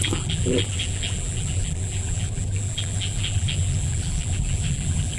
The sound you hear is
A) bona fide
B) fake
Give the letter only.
B